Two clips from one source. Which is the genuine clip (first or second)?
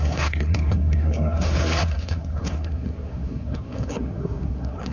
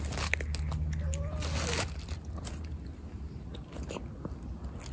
second